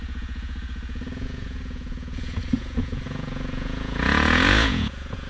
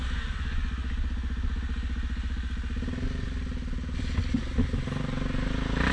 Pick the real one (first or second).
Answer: second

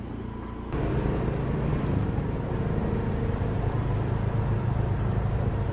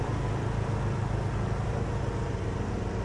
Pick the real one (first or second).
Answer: second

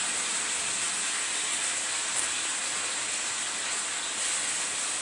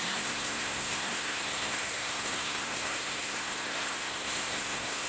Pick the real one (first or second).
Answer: first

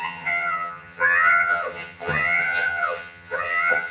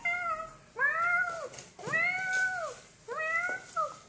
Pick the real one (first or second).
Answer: second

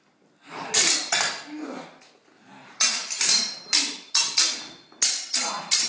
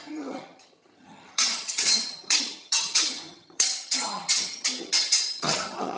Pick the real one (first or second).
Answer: first